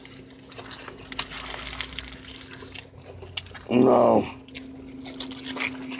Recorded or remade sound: recorded